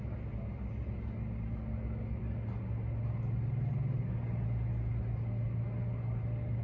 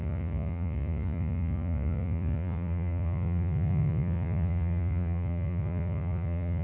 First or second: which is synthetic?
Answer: second